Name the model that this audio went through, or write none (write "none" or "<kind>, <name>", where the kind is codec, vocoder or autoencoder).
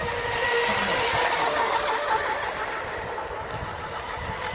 none